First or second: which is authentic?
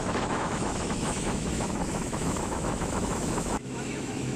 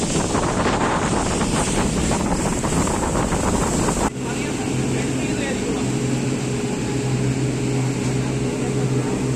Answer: second